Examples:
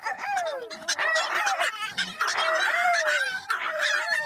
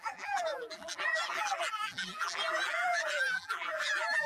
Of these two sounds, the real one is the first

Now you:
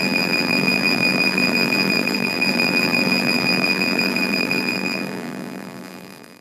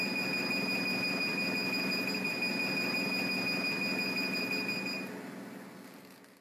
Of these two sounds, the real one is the second